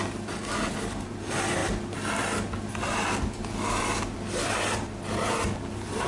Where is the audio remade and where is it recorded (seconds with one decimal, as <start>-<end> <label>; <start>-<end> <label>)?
0.0-6.1 recorded